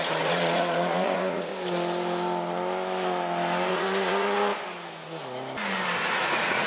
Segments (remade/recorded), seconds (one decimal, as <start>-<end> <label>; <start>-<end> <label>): 0.0-1.5 remade; 1.5-3.7 recorded; 3.7-4.5 remade; 4.5-6.1 recorded; 6.1-6.7 remade